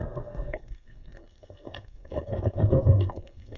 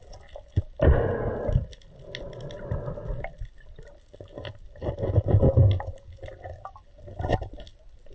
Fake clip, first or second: first